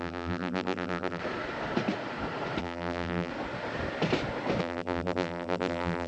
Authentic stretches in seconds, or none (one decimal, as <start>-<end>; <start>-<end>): 1.2-2.6; 3.3-4.6